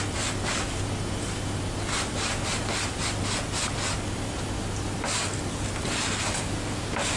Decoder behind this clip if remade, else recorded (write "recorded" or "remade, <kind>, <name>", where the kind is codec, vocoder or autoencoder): recorded